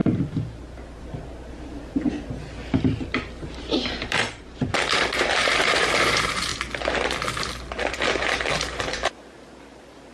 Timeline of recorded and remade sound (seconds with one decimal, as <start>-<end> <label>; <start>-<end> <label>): 0.0-2.6 remade; 2.6-3.4 recorded; 3.4-6.5 remade; 6.5-7.9 recorded; 7.9-10.1 remade